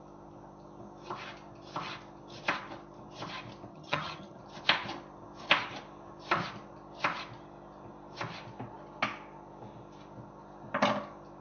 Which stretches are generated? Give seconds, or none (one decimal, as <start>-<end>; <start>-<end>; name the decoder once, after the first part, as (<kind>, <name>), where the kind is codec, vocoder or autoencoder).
3.7-4.4 (vocoder, HiFi-GAN)